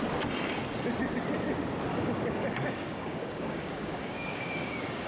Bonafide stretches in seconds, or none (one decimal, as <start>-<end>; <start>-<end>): 0.0-1.9